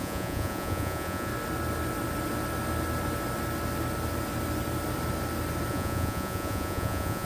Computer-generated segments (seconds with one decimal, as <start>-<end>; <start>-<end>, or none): 0.0-1.3; 5.7-7.3